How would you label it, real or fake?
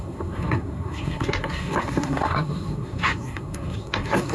fake